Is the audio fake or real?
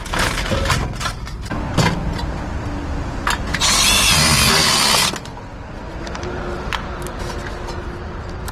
real